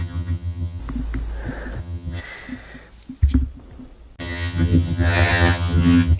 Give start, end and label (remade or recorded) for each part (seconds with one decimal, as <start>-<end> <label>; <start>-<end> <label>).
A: 0.0-0.8 remade; 0.8-1.8 recorded; 1.8-2.2 remade; 2.2-4.2 recorded; 4.2-6.2 remade